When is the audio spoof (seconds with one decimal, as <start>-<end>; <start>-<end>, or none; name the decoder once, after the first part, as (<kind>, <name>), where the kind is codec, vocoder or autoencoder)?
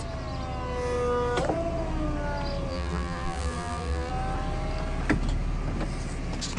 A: 2.7-4.1 (vocoder, BigVGAN v2)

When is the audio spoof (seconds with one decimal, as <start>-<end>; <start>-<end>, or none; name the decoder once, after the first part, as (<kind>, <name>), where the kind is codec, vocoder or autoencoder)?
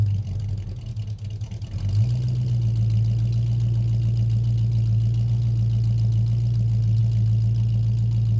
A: none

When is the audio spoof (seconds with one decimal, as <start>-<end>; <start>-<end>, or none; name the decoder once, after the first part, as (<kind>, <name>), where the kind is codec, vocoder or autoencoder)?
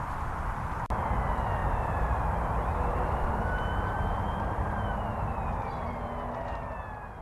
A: 1.6-5.9 (vocoder, BigVGAN v2)